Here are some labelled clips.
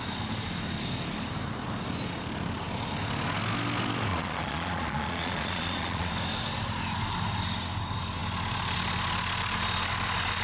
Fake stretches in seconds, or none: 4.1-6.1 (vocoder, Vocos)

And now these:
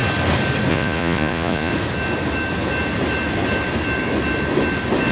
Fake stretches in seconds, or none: 0.7-1.7 (vocoder, Vocos)

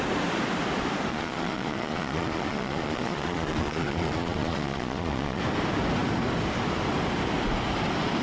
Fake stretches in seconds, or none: 1.1-5.4 (vocoder, Vocos)

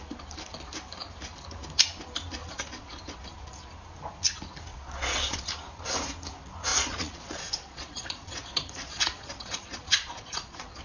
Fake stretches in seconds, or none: 2.4-3.0 (vocoder, Vocos); 4.7-5.5; 6.7-10.8

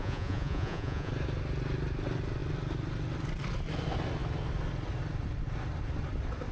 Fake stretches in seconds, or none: 0.0-1.1 (vocoder, Vocos)